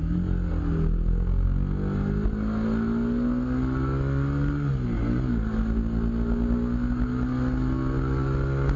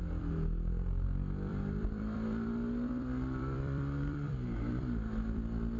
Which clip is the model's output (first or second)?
second